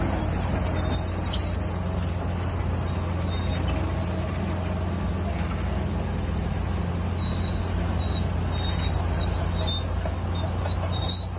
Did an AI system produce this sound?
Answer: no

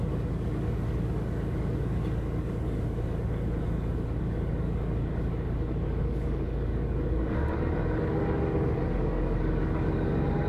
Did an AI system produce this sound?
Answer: yes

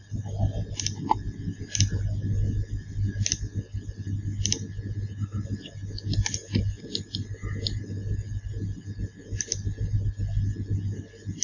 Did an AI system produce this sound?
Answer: no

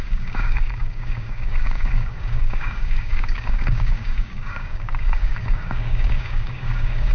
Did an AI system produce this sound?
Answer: yes